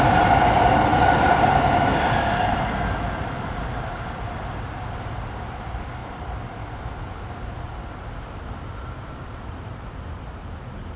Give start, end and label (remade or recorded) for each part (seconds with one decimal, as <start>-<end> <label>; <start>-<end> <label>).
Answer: 0.0-11.0 recorded